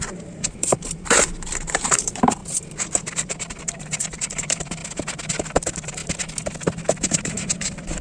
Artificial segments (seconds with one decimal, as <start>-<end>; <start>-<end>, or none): 0.0-2.4; 3.6-4.8; 5.4-6.0; 7.1-8.0